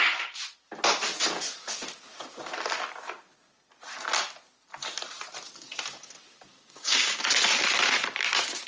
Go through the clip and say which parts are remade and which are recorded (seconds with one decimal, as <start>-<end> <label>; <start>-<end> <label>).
0.0-6.5 recorded; 6.5-7.2 remade; 7.2-8.7 recorded